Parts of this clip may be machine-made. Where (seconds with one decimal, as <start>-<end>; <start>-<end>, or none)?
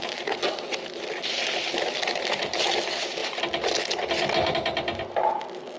none